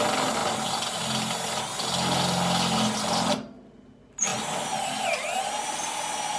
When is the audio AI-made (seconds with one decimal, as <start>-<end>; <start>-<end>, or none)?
none

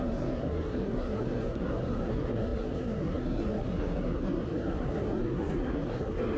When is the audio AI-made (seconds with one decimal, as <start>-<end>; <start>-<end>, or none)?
0.0-6.4

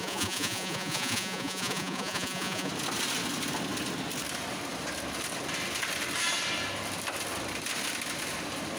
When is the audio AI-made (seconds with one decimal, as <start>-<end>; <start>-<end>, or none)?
0.0-2.7

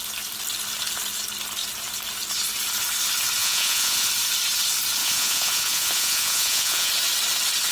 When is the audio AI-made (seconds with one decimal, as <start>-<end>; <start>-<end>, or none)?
3.4-4.1; 5.0-6.9

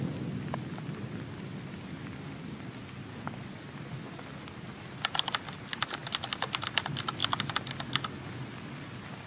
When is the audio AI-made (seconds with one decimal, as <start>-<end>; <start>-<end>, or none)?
none

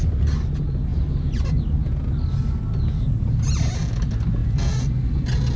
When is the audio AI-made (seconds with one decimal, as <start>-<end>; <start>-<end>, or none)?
none

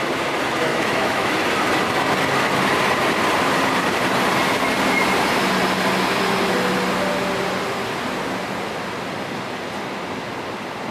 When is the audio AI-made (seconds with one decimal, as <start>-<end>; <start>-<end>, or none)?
0.7-1.3

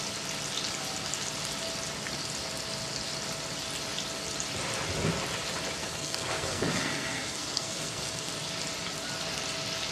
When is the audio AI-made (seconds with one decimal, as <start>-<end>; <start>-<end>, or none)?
5.8-8.3